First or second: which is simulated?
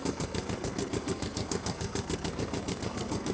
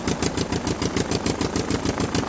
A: first